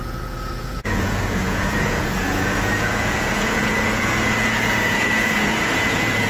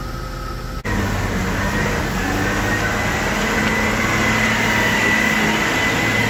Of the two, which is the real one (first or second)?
second